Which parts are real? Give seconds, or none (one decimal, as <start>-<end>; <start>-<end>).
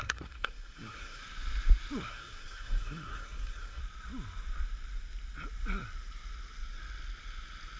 1.2-2.1; 3.8-7.8